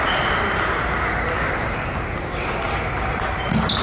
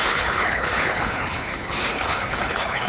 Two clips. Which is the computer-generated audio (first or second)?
second